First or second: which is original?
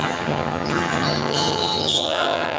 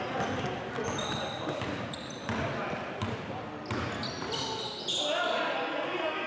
second